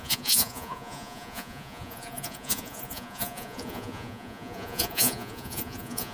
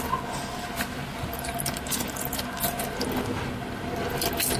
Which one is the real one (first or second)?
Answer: second